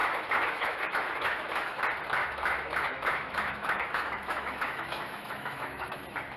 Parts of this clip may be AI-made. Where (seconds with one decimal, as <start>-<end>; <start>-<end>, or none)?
0.0-1.8; 2.2-6.0